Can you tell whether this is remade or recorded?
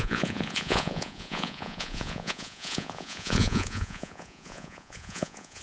remade